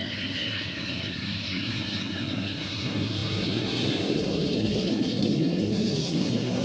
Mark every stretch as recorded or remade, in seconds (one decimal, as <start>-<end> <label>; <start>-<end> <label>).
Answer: 0.0-6.6 remade